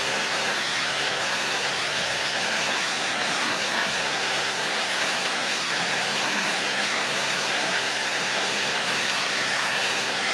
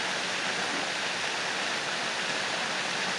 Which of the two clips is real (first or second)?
second